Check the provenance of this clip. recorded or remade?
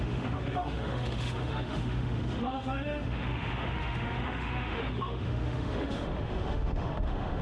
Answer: remade